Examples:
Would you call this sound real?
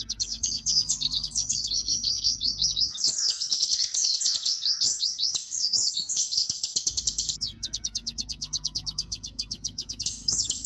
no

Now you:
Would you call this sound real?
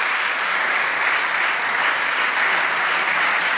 yes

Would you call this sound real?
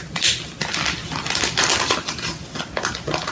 yes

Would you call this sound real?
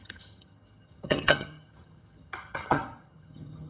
no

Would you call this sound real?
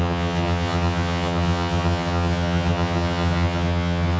no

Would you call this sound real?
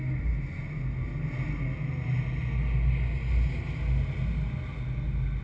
yes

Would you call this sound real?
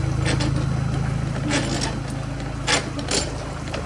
yes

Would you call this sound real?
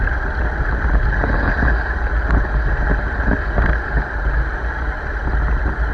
yes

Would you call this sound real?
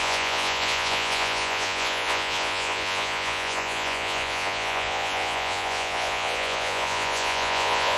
no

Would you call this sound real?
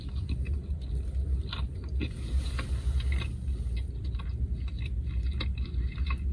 yes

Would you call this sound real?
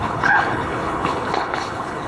no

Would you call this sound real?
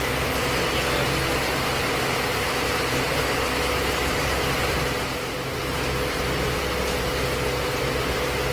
yes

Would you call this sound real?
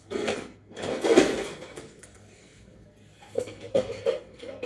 no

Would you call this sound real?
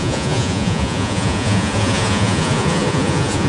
no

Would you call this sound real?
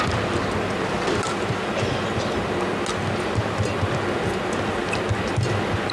yes